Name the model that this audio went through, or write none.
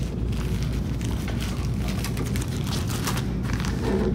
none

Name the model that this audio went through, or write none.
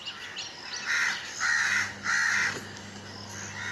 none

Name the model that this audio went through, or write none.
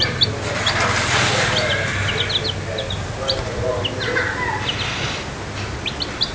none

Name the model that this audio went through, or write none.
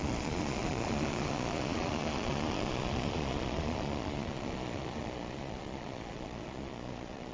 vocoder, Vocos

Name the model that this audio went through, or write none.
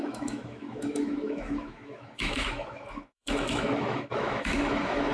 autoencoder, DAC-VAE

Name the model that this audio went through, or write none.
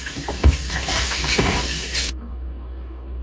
codec, DAC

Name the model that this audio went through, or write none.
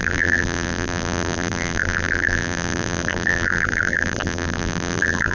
vocoder, BigVGAN v2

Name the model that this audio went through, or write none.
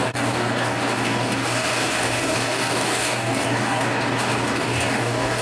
codec, DAC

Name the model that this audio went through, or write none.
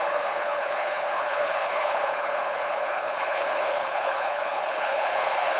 codec, HILCodec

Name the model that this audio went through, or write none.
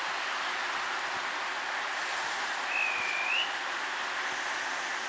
none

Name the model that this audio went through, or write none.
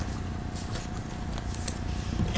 none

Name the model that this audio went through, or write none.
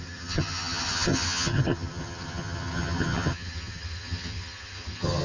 vocoder, HiFi-GAN